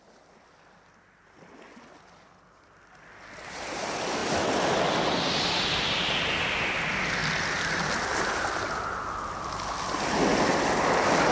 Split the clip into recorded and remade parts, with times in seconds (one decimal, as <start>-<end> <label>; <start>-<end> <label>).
0.0-11.3 recorded